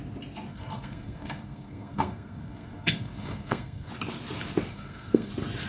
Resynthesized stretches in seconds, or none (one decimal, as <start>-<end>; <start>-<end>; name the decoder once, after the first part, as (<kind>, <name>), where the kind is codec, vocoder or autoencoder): 0.5-3.9 (codec, SNAC); 4.7-5.3